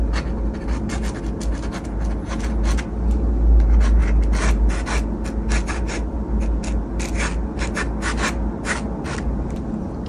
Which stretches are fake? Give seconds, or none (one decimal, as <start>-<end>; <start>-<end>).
none